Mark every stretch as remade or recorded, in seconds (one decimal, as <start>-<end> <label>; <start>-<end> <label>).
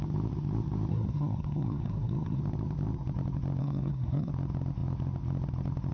0.0-0.9 recorded; 0.9-2.4 remade; 2.4-3.6 recorded; 3.6-4.3 remade; 4.3-5.9 recorded